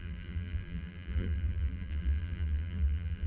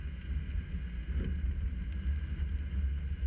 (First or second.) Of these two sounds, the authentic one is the second